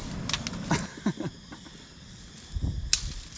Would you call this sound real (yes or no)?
yes